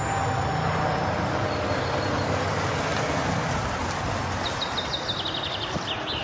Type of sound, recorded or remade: recorded